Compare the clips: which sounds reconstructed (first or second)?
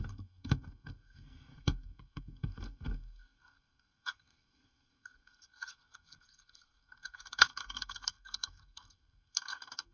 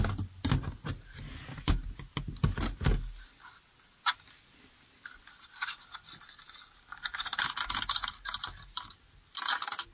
first